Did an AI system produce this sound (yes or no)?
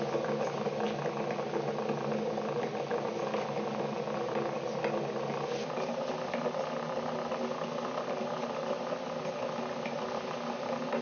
no